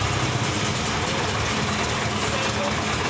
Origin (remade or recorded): recorded